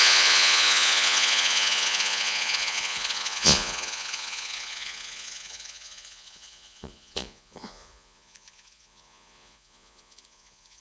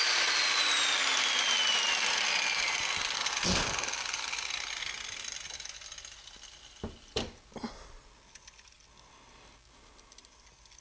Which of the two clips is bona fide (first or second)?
second